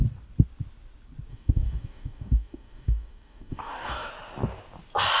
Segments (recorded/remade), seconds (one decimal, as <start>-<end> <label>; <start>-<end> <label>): 0.0-1.3 recorded; 1.3-4.1 remade; 4.1-5.2 recorded